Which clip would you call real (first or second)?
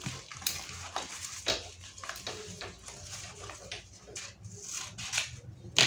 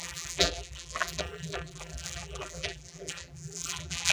first